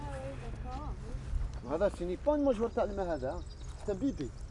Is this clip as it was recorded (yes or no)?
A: yes